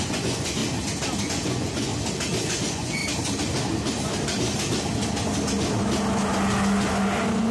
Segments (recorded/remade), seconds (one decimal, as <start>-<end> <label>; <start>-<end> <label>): 0.0-0.6 remade; 0.6-1.2 recorded; 1.2-1.9 remade; 1.9-2.4 recorded; 2.4-3.0 remade; 3.0-7.5 recorded